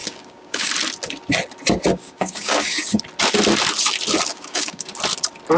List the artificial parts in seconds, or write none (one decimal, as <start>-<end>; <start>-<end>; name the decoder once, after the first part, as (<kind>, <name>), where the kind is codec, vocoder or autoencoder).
0.0-0.7 (codec, DAC); 2.0-3.0; 4.3-4.9

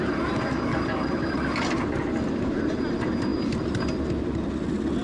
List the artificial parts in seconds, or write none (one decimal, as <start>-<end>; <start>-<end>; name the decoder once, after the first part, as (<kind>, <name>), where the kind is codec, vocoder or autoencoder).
none

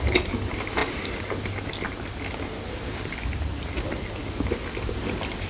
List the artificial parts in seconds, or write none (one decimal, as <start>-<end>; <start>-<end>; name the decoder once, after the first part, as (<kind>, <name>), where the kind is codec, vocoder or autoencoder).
none

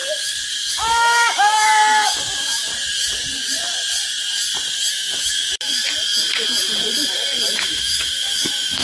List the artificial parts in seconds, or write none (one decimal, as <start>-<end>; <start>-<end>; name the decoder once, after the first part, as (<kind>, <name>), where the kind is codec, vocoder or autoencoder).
0.7-2.7 (autoencoder, DAC-VAE); 4.9-5.8; 7.5-8.8

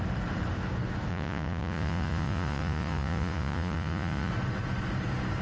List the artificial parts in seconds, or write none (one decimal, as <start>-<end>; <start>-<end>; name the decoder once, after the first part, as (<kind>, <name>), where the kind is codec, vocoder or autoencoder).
1.1-4.3 (vocoder, Vocos)

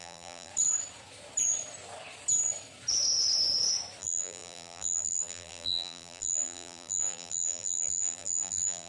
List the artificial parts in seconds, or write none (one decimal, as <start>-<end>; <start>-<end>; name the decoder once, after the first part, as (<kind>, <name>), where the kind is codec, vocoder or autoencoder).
0.0-0.5 (vocoder, BigVGAN v2); 4.0-8.9

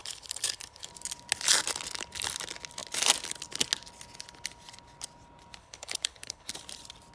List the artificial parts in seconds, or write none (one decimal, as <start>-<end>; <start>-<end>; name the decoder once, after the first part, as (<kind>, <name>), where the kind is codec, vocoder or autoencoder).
0.0-0.9 (codec, HILCodec); 5.6-6.5